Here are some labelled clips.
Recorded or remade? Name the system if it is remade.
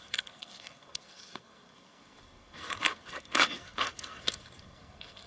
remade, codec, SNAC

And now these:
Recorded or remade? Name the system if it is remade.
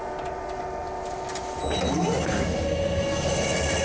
recorded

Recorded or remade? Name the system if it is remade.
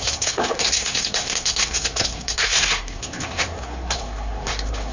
remade, codec, SNAC